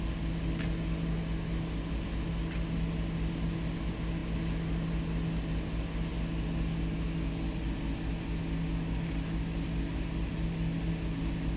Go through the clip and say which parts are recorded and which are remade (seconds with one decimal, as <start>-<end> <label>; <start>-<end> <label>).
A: 0.0-11.6 recorded

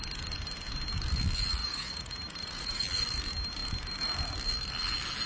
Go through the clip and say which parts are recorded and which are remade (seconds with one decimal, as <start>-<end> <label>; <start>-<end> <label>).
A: 0.0-1.6 recorded; 1.6-2.8 remade; 2.8-5.3 recorded

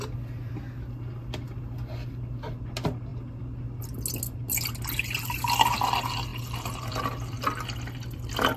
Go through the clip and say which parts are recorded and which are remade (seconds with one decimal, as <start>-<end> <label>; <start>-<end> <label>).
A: 0.0-8.6 recorded

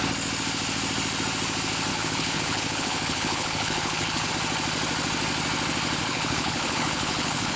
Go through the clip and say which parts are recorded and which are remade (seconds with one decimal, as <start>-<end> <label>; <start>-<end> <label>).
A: 0.0-1.9 recorded; 1.9-4.3 remade; 4.3-6.0 recorded; 6.0-7.6 remade

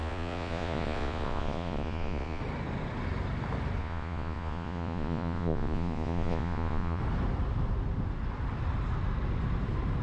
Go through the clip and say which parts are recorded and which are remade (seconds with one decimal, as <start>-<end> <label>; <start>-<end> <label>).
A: 0.0-2.4 remade; 2.4-3.8 recorded; 3.8-7.0 remade; 7.0-10.0 recorded

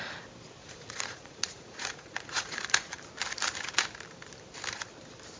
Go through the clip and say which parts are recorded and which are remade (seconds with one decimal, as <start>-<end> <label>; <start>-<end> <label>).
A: 0.0-0.6 recorded; 0.6-3.0 remade; 3.0-5.4 recorded

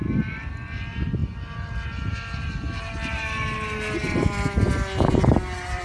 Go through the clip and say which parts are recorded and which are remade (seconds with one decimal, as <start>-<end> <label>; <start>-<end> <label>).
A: 0.0-0.5 remade; 0.5-5.8 recorded

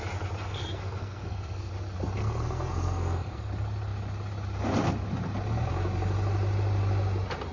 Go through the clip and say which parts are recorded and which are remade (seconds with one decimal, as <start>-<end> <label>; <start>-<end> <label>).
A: 0.0-0.4 recorded; 0.4-1.7 remade; 1.7-2.2 recorded; 2.2-3.5 remade; 3.5-7.5 recorded